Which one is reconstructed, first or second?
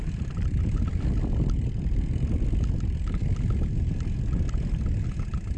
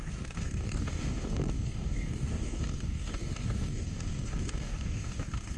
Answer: second